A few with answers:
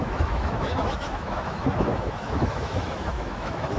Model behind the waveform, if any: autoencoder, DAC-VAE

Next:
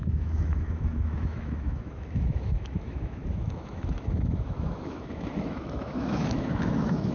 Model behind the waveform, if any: autoencoder, DAC-VAE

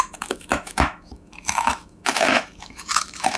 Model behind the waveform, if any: autoencoder, DAC-VAE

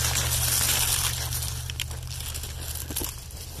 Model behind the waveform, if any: none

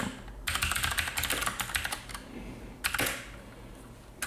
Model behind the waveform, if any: none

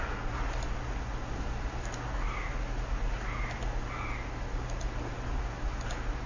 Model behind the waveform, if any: none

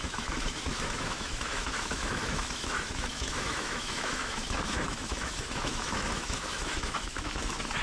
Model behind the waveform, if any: autoencoder, DAC-VAE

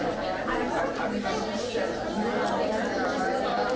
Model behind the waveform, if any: none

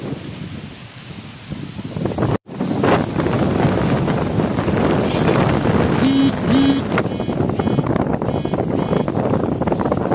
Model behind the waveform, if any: none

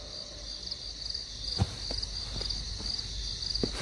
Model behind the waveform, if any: none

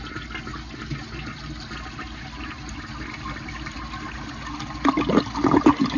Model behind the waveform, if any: none